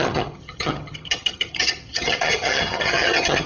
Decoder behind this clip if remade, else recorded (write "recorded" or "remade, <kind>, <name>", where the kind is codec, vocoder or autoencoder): remade, vocoder, HiFi-GAN